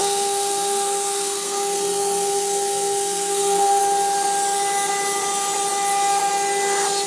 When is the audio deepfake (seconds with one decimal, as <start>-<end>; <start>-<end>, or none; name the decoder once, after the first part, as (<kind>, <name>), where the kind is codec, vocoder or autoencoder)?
0.0-3.8 (codec, SNAC)